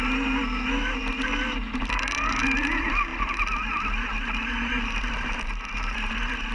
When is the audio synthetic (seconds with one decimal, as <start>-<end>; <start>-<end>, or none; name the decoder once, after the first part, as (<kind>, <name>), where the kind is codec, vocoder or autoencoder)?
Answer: none